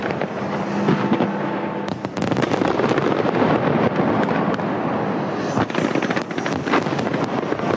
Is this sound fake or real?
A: real